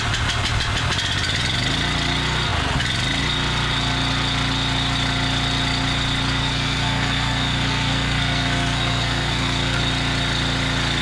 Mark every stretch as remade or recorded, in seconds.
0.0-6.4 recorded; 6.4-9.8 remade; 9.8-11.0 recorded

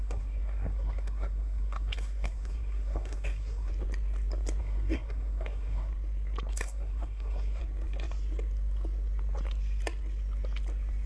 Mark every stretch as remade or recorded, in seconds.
0.0-3.7 remade; 3.7-4.6 recorded; 4.6-5.9 remade; 5.9-6.5 recorded; 6.5-7.6 remade; 7.6-11.1 recorded

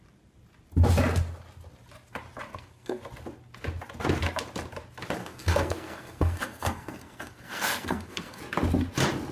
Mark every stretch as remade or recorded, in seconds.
0.0-2.5 recorded; 2.5-3.0 remade; 3.0-5.2 recorded; 5.2-8.4 remade; 8.4-9.3 recorded

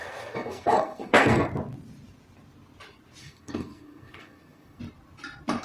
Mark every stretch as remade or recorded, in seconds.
0.0-1.5 remade; 1.5-3.2 recorded; 3.2-4.8 remade; 4.8-5.6 recorded

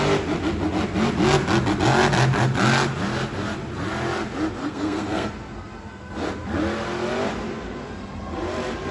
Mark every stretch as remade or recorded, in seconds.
0.0-4.6 recorded; 4.6-5.3 remade; 5.3-8.9 recorded

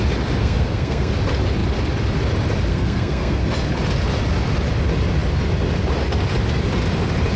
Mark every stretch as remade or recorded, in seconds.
0.0-0.4 recorded; 0.4-1.1 remade; 1.1-2.7 recorded; 2.7-3.4 remade; 3.4-7.4 recorded

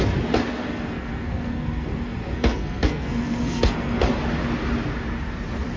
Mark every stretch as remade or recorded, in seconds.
0.0-0.5 recorded; 0.5-4.0 remade; 4.0-5.8 recorded

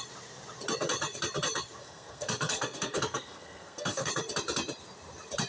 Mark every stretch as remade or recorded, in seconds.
0.0-1.8 recorded; 1.8-4.1 remade; 4.1-5.5 recorded